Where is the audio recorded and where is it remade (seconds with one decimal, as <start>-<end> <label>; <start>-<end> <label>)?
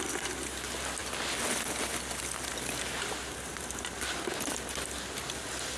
0.0-5.8 recorded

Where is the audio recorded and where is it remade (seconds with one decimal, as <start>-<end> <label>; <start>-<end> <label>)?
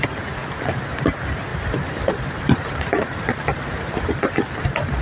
0.0-1.5 recorded; 1.5-4.1 remade; 4.1-5.0 recorded